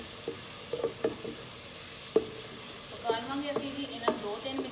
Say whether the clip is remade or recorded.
recorded